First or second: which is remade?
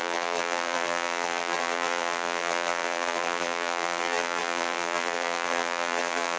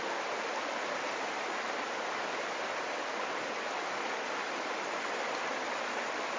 first